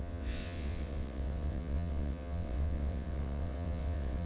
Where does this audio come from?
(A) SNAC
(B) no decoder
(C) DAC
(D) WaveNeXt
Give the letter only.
D